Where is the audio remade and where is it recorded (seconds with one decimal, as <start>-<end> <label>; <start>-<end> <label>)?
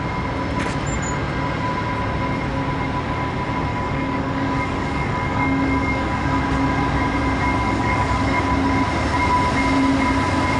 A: 0.0-3.7 recorded; 3.7-6.4 remade; 6.4-7.6 recorded; 7.6-8.4 remade; 8.4-10.6 recorded